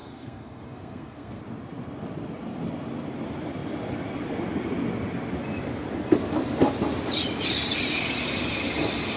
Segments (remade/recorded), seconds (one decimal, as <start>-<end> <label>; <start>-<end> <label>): 0.0-1.4 remade; 1.4-9.2 recorded